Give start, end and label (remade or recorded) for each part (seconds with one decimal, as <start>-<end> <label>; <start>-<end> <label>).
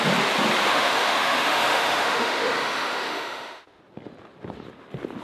0.0-0.7 recorded; 0.7-3.8 remade; 3.8-5.2 recorded